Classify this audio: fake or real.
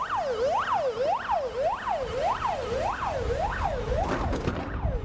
real